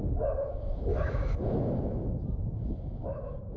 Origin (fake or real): fake